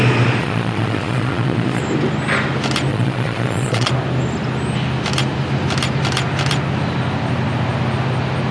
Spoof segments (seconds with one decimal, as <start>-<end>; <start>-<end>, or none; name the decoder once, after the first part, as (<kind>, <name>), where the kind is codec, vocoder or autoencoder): 0.4-1.8 (vocoder, Vocos); 2.9-3.9